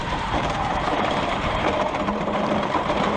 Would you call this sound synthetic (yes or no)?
yes